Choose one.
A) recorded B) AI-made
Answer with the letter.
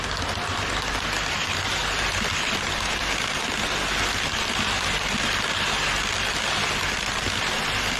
A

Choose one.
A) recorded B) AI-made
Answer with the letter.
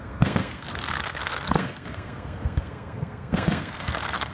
B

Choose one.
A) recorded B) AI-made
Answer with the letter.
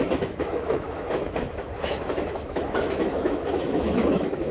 B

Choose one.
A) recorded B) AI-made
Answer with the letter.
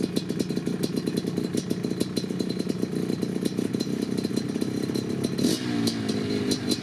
A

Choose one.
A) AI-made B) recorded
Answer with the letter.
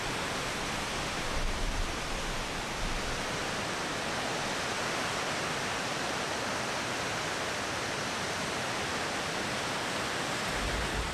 B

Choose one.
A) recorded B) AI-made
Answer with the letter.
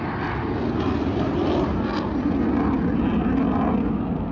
A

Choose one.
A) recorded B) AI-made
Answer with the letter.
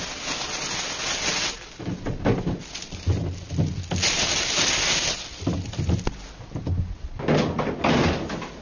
A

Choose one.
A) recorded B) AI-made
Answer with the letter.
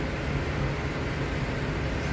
A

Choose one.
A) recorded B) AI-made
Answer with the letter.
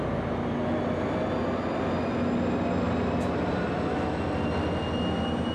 A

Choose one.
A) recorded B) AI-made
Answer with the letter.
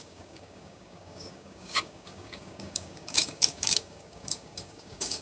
B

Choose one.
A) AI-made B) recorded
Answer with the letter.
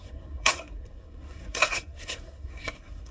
A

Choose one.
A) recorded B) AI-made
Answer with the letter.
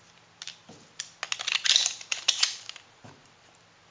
A